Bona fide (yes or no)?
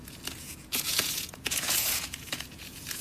no